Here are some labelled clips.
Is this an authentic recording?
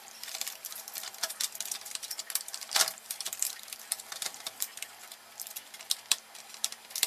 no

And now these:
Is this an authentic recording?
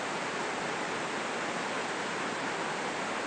yes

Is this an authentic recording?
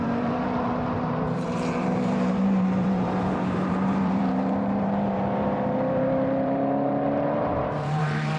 no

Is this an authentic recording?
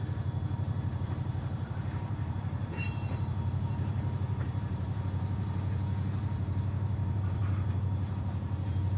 no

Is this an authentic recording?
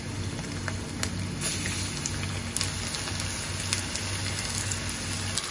yes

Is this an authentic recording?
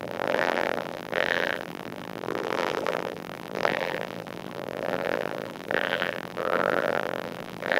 no